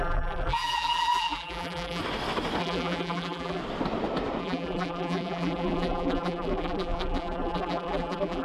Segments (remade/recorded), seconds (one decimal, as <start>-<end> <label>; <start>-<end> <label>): 0.0-2.0 remade; 2.0-2.6 recorded; 2.6-3.6 remade; 3.6-4.4 recorded; 4.4-8.4 remade